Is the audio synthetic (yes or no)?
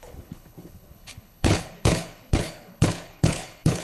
yes